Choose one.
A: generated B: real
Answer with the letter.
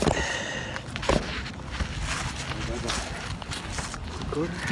B